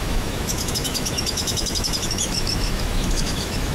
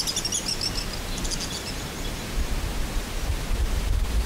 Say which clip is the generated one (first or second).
first